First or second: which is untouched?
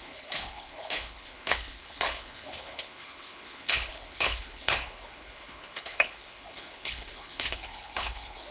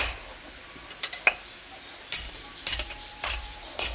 second